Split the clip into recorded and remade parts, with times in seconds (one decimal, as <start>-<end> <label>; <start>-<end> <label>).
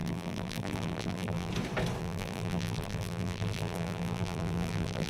0.0-1.5 remade; 1.5-2.0 recorded; 2.0-5.1 remade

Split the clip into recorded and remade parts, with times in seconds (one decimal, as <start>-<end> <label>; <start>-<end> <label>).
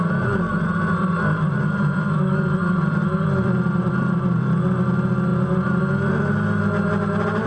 0.0-1.0 recorded; 1.0-4.6 remade; 4.6-5.3 recorded; 5.3-5.8 remade; 5.8-7.5 recorded